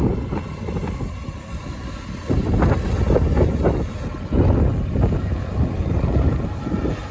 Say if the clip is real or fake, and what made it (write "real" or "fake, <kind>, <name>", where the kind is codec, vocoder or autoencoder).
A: real